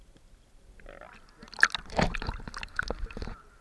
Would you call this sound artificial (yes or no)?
no